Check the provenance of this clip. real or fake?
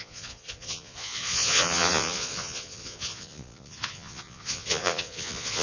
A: fake